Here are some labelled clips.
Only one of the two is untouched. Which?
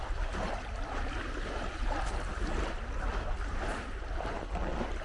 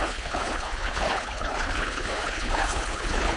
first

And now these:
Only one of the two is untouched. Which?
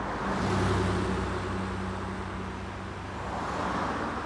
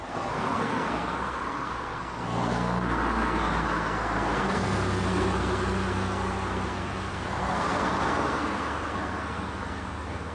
first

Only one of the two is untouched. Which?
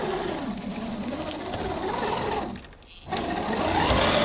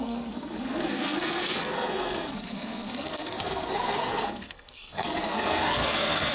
first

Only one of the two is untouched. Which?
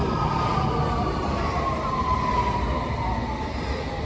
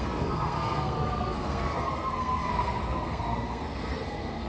first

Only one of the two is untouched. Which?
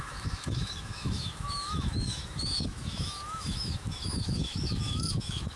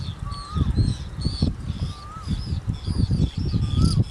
second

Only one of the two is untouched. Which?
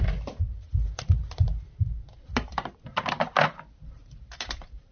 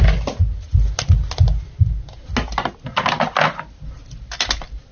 second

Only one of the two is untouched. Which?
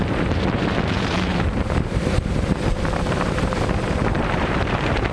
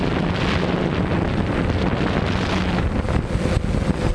second